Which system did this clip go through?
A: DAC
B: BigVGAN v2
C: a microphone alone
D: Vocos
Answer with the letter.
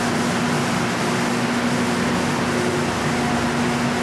C